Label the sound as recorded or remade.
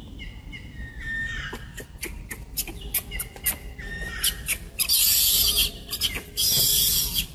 recorded